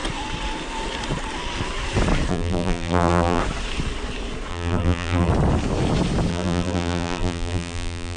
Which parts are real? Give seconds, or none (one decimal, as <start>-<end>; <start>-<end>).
0.0-2.3; 3.4-4.5; 5.3-6.3